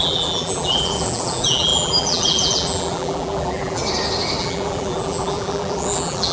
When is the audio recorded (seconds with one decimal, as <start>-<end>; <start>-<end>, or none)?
3.8-4.4